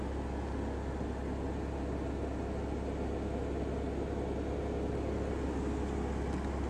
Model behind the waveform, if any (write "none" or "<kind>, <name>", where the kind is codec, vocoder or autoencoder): none